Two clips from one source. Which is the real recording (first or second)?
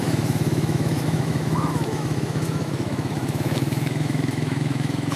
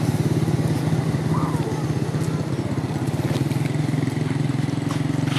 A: second